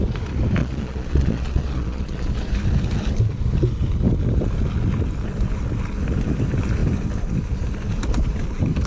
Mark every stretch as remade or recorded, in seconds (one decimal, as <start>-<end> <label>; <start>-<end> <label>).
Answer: 0.0-0.6 recorded; 0.6-2.3 remade; 2.3-8.9 recorded